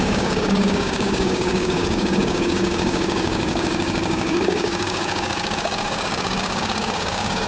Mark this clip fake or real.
fake